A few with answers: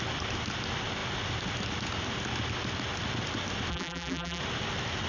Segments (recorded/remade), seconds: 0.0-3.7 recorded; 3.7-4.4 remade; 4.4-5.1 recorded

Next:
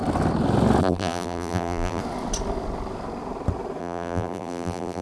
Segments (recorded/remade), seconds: 0.0-0.8 recorded; 0.8-2.0 remade; 2.0-3.8 recorded; 3.8-5.0 remade